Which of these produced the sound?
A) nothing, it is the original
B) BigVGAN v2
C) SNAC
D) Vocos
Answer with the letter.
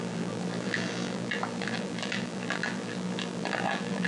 B